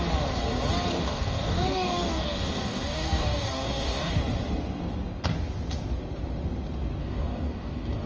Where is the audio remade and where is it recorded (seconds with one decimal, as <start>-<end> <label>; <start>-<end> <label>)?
0.0-0.9 recorded; 0.9-4.1 remade; 4.1-7.0 recorded; 7.0-8.1 remade